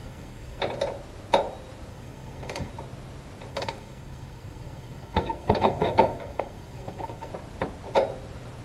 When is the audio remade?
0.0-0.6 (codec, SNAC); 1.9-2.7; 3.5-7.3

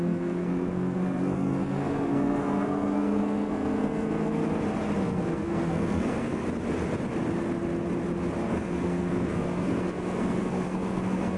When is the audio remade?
0.0-4.4 (codec, SNAC); 5.0-6.4; 8.5-11.4